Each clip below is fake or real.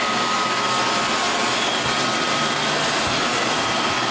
real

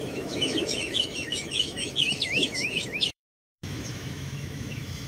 fake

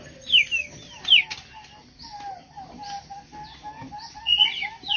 real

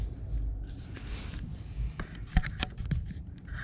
real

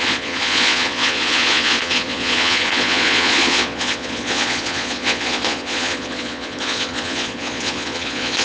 fake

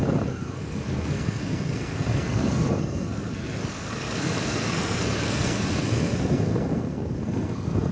fake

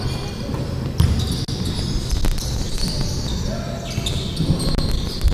real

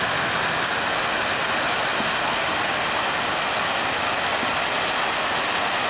real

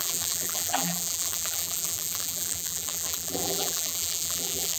fake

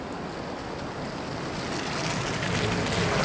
real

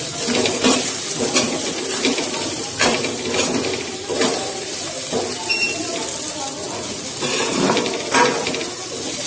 real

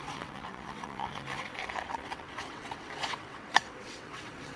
fake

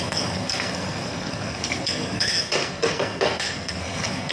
fake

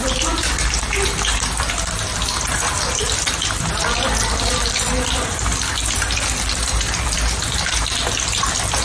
fake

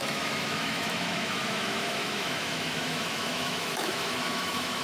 fake